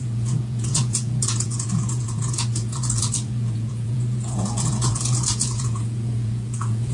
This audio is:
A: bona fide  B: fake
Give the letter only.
B